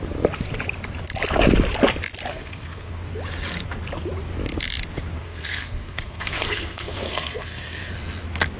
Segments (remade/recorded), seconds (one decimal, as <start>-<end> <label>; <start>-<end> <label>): 0.0-2.3 recorded; 2.3-3.0 remade; 3.0-5.2 recorded; 5.2-7.9 remade; 7.9-8.6 recorded